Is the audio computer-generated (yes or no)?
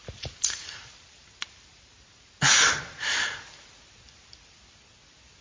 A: no